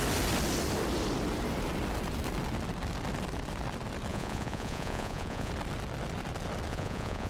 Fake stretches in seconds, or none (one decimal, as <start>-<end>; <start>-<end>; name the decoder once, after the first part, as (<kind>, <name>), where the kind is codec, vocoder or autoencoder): 4.1-5.5 (vocoder, Vocos); 6.7-7.3